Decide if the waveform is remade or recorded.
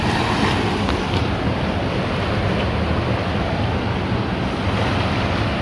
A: recorded